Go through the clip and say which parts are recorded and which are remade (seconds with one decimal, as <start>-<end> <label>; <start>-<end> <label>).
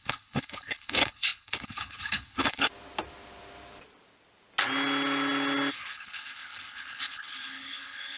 0.0-2.7 remade; 2.7-5.7 recorded; 5.7-8.2 remade